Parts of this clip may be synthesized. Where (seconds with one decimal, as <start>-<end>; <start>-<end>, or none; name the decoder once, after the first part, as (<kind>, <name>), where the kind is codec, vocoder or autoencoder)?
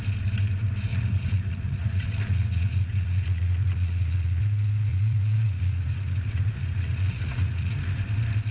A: 0.9-4.4 (vocoder, Vocos); 4.9-8.0